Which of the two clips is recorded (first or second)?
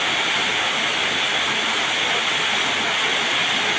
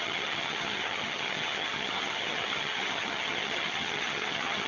first